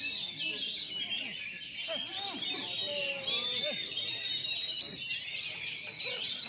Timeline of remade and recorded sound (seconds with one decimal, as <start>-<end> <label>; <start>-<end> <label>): 0.0-2.1 recorded; 2.1-6.0 remade; 6.0-6.5 recorded